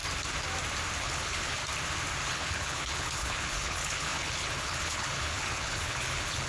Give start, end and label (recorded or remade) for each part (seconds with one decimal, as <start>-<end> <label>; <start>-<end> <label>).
0.0-1.0 recorded; 1.0-1.6 remade; 1.6-2.3 recorded; 2.3-6.5 remade